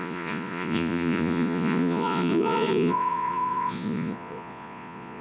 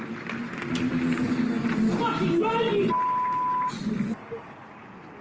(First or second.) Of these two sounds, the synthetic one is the first